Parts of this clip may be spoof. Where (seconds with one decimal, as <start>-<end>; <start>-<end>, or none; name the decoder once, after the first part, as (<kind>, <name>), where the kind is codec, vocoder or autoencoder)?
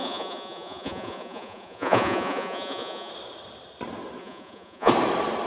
0.0-3.1 (vocoder, Vocos); 4.2-4.9